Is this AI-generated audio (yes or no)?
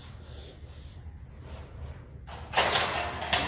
no